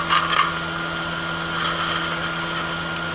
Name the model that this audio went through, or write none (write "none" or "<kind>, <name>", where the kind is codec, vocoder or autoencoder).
none